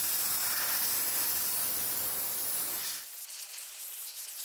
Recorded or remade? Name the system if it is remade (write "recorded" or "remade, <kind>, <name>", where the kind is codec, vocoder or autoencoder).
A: recorded